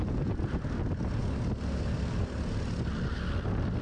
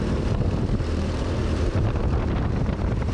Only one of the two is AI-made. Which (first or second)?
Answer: second